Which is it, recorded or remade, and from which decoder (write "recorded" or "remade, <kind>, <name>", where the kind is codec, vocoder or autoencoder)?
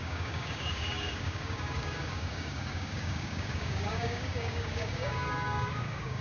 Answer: remade, codec, DAC